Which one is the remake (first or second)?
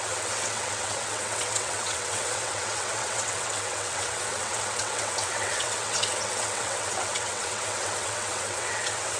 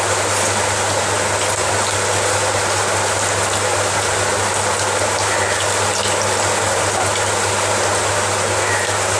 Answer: first